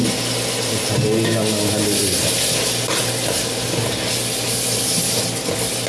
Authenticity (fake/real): real